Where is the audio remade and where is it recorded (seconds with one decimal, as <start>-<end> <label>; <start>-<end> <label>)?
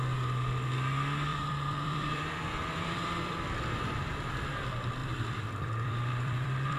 0.0-1.3 recorded; 1.3-4.5 remade; 4.5-5.0 recorded; 5.0-6.8 remade